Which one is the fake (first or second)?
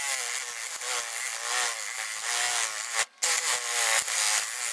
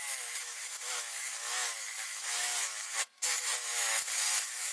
second